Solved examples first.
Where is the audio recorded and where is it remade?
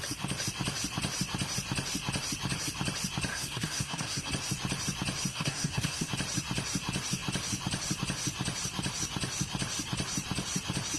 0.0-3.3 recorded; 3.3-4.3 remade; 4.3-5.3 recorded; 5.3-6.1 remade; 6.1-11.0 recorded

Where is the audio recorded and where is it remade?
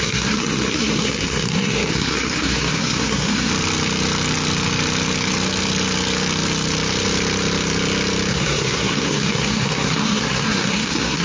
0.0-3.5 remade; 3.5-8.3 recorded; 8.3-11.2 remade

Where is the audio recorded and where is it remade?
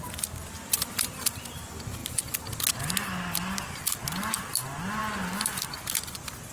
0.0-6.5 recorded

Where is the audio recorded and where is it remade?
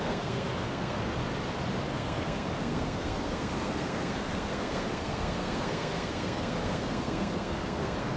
0.0-1.2 remade; 1.2-1.9 recorded; 1.9-8.2 remade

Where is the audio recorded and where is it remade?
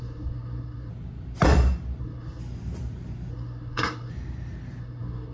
0.0-0.9 remade; 0.9-2.0 recorded; 2.0-2.4 remade; 2.4-3.3 recorded; 3.3-4.1 remade; 4.1-4.8 recorded; 4.8-5.3 remade